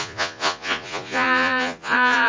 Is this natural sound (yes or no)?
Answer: no